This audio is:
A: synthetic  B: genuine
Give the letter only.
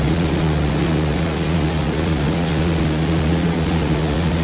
A